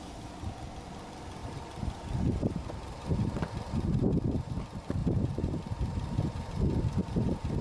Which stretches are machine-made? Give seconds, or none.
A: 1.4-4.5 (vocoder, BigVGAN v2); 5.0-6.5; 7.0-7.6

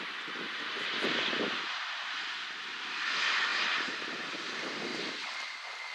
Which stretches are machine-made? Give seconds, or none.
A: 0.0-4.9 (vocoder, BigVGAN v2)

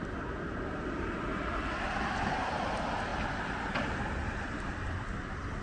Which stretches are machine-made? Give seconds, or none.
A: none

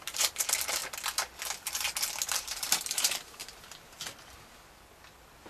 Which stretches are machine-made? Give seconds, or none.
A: 0.0-0.8 (vocoder, BigVGAN v2); 2.3-3.4

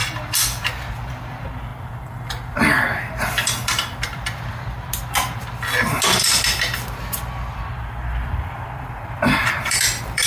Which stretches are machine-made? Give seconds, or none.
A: 0.0-4.9 (vocoder, BigVGAN v2); 7.8-10.3

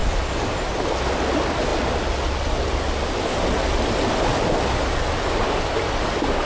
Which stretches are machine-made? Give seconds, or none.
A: 0.0-0.7 (vocoder, BigVGAN v2)